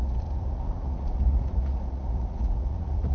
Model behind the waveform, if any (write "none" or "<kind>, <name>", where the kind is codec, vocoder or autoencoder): vocoder, Vocos